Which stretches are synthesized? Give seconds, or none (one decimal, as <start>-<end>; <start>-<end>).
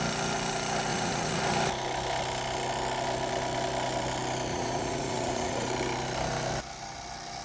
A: 0.9-1.4; 4.5-5.7